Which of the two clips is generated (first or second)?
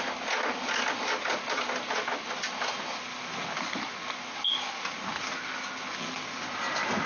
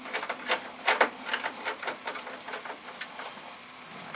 second